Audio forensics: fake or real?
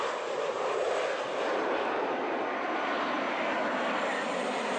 fake